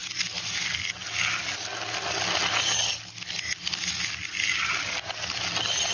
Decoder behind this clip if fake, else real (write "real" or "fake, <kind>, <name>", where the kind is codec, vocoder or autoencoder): real